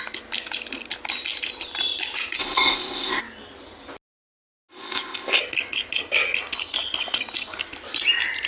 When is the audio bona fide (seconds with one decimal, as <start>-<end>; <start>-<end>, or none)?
0.0-2.4; 3.2-4.7; 5.4-8.5